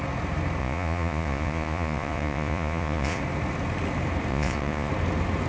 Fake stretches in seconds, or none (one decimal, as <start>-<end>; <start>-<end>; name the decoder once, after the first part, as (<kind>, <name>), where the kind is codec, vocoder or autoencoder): 0.6-3.2 (vocoder, Vocos); 4.3-4.9